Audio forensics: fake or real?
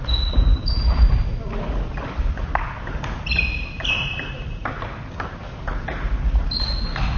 real